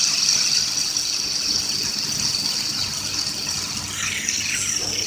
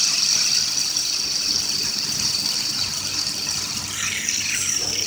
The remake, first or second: second